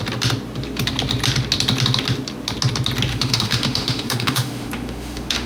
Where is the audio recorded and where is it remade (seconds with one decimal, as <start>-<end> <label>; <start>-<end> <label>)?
0.0-3.1 recorded; 3.1-5.5 remade